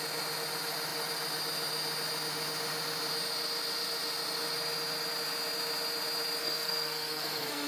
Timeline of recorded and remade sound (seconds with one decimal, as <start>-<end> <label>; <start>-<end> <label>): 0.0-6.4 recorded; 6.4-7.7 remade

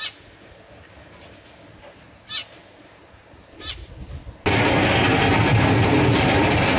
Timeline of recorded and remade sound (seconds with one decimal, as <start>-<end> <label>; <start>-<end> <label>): 0.0-6.8 recorded

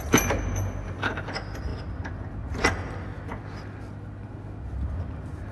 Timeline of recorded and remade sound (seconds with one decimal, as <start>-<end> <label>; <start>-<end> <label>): 0.0-5.5 recorded

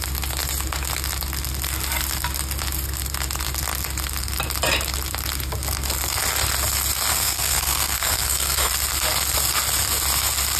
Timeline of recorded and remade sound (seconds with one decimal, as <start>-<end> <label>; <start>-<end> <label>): 0.0-7.1 recorded; 7.1-8.7 remade; 8.7-10.6 recorded

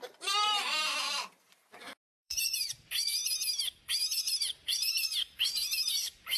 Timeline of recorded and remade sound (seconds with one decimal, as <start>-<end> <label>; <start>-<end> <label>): 0.0-3.2 remade; 3.2-4.4 recorded; 4.4-6.4 remade